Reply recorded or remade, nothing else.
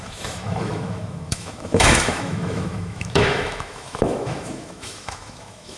remade